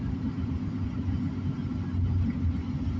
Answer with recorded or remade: recorded